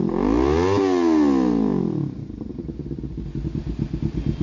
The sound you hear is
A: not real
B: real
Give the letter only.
B